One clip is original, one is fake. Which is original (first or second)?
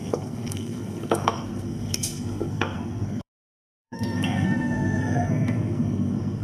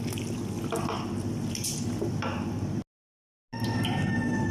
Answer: second